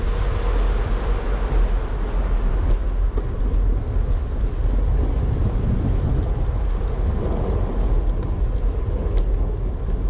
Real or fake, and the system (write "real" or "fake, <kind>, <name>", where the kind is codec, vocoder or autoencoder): real